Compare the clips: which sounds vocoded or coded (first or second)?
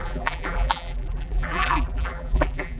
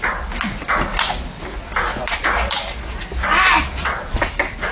first